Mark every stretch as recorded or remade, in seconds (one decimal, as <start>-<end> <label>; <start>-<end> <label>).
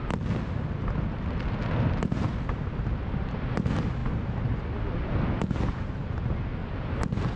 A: 0.0-7.4 recorded